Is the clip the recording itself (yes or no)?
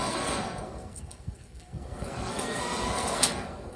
no